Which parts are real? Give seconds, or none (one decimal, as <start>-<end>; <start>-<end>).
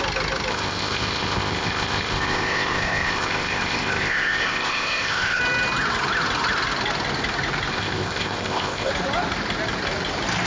0.0-0.5; 5.4-7.7; 8.9-10.5